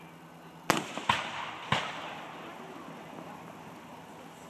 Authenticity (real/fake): real